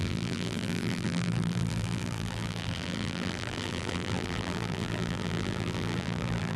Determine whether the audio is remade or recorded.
remade